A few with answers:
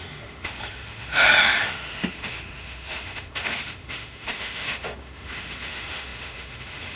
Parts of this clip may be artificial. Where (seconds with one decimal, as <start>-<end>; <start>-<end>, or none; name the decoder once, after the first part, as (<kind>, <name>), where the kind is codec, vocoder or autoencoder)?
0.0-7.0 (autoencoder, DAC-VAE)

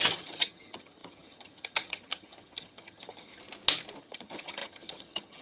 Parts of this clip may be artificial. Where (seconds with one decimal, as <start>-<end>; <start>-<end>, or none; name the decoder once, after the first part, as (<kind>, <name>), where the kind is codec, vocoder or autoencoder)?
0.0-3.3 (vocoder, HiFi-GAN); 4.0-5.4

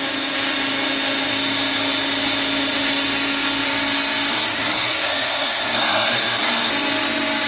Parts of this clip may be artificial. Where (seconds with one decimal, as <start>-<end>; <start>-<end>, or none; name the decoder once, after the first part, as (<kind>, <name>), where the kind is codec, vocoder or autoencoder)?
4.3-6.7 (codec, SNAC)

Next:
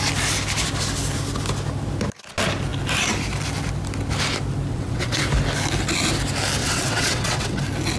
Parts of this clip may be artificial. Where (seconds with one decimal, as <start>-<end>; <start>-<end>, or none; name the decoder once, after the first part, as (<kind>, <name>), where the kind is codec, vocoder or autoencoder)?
4.7-5.2 (vocoder, WaveNeXt); 6.6-7.6